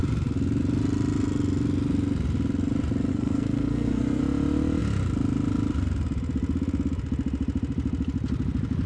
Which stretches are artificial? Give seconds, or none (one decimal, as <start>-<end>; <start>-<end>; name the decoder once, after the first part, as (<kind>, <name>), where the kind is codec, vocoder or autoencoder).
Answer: 3.1-4.2 (codec, SNAC)